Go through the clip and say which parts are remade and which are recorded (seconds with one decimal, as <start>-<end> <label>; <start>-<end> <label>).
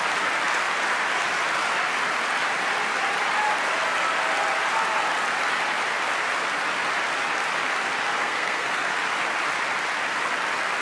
0.0-8.2 recorded; 8.2-8.9 remade; 8.9-10.8 recorded